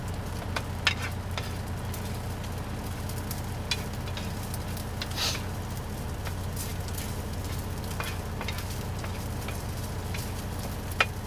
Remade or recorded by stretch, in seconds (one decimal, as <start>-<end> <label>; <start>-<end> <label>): 0.0-11.3 recorded